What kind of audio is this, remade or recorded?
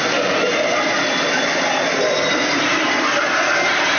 recorded